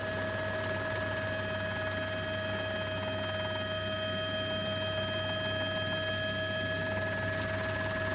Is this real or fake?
real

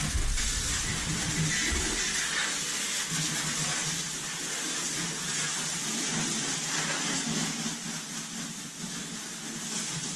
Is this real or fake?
real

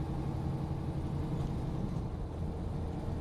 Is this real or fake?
real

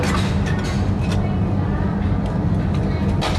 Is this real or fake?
real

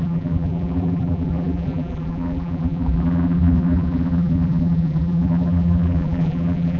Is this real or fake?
fake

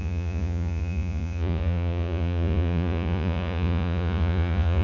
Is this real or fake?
fake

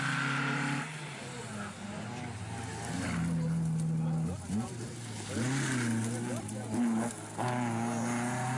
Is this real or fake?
real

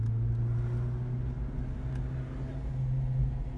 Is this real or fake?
real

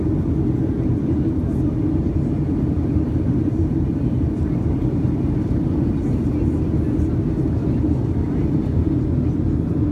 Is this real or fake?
real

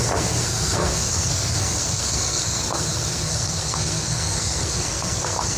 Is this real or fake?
fake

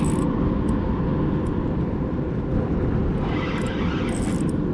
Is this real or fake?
real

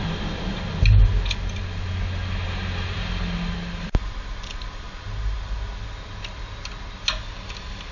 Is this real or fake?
real